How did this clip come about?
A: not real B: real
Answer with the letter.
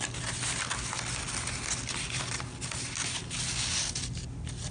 B